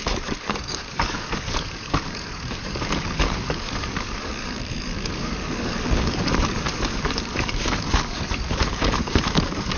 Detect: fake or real fake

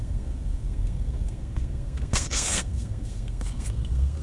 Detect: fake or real fake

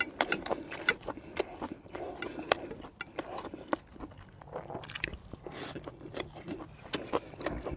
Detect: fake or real fake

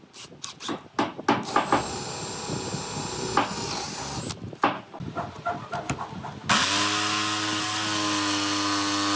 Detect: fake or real real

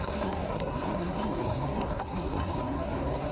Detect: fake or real fake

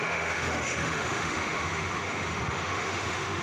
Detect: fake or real fake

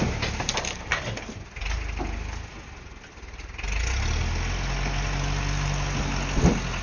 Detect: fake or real real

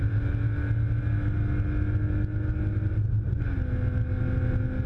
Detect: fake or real real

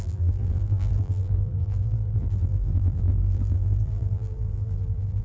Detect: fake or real fake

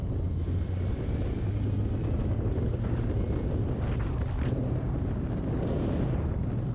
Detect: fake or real real